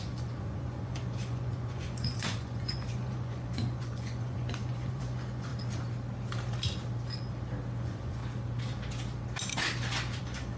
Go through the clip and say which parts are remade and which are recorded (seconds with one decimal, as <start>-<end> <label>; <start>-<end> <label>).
0.0-5.5 remade; 5.5-7.8 recorded; 7.8-8.2 remade; 8.2-10.2 recorded; 10.2-10.6 remade